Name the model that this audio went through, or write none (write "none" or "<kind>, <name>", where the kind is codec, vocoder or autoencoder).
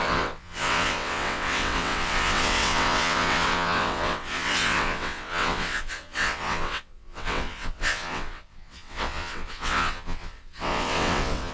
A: vocoder, WaveNeXt